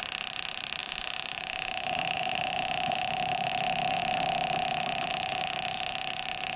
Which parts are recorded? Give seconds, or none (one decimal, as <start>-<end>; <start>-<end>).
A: 0.0-0.8; 3.5-6.6